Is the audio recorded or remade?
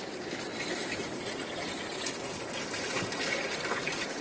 recorded